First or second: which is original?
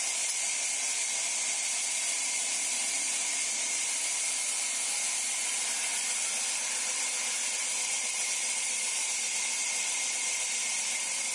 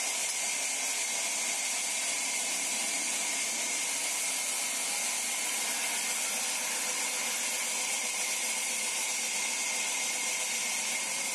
second